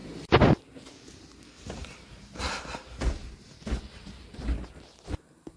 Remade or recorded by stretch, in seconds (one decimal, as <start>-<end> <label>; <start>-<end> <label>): 0.0-0.6 remade; 0.6-1.8 recorded; 1.8-2.4 remade; 2.4-5.6 recorded